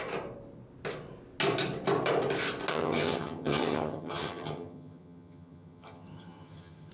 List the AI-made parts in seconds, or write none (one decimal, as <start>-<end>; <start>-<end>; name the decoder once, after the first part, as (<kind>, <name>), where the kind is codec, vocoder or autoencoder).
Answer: 2.7-6.9 (vocoder, HiFi-GAN)